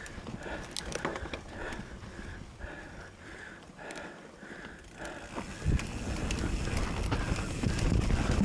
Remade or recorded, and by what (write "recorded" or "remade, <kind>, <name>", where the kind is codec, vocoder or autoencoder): recorded